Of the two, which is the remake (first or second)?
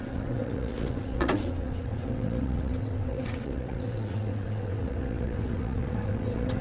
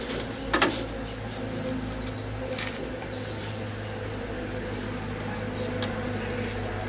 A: first